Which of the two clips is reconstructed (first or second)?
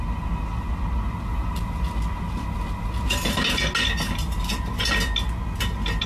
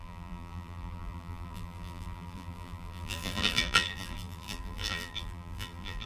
second